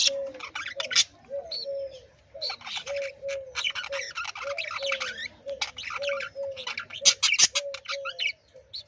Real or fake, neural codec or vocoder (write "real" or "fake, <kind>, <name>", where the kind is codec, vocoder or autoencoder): real